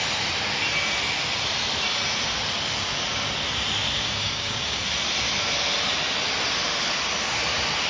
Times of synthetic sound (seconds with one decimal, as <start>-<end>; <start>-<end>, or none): 4.0-4.8